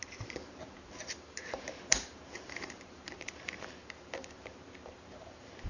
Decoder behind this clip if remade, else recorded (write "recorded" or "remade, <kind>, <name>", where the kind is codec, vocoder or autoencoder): remade, vocoder, BigVGAN v2